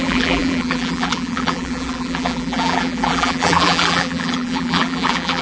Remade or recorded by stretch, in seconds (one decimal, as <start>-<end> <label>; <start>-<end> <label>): 0.0-5.4 remade